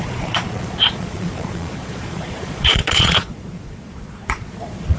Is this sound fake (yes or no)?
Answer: yes